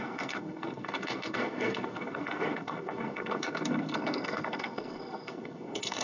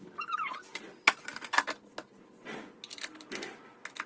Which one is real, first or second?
second